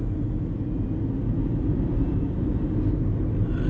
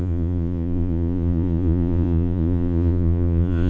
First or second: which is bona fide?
first